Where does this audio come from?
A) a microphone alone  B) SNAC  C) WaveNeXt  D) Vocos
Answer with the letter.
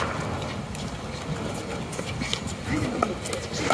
A